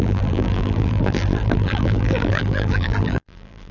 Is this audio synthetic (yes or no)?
yes